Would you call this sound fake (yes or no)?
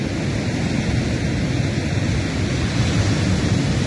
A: no